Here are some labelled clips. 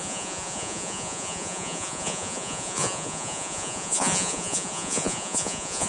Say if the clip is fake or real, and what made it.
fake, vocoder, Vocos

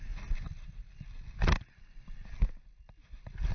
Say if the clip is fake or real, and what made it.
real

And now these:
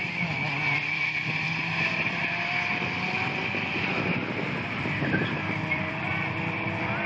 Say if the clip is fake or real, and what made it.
fake, vocoder, BigVGAN v2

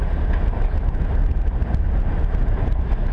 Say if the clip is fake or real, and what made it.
real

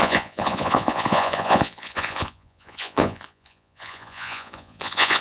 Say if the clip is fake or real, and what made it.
fake, vocoder, Vocos